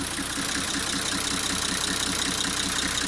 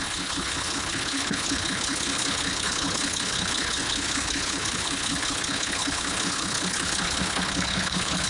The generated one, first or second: second